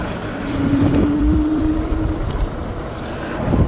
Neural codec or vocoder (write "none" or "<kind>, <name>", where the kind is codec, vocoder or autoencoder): vocoder, BigVGAN v2